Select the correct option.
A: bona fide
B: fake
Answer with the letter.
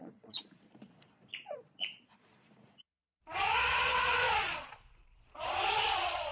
B